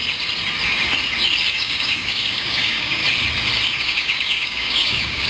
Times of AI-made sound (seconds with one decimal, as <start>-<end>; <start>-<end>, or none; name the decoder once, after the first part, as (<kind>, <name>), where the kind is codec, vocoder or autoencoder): 1.5-3.0 (codec, DAC); 3.8-5.3